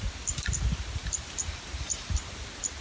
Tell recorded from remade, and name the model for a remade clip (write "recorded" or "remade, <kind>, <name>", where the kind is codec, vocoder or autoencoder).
recorded